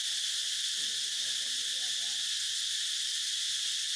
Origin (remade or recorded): recorded